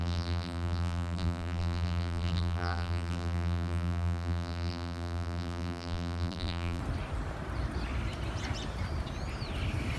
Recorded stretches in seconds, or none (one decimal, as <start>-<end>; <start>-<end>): 6.8-10.0